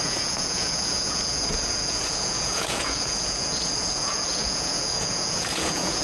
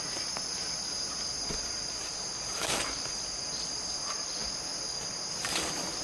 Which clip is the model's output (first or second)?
first